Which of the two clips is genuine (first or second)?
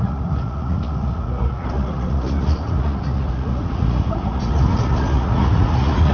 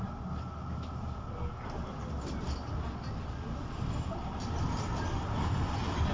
second